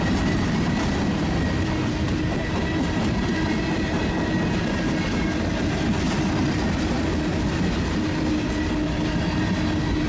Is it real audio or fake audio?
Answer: real